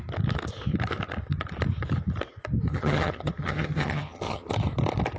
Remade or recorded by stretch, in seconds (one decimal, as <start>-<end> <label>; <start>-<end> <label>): 0.0-2.7 recorded; 2.7-4.5 remade; 4.5-5.2 recorded